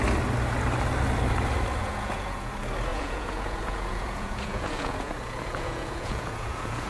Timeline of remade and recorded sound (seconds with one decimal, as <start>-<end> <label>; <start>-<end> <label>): 0.0-1.8 recorded; 1.8-2.5 remade; 2.5-2.9 recorded; 2.9-6.9 remade